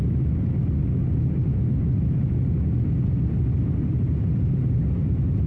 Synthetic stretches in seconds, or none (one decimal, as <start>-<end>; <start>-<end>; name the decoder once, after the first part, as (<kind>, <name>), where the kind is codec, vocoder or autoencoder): none